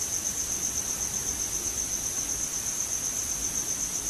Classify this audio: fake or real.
real